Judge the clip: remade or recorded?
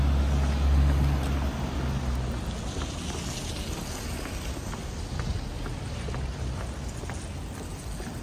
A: recorded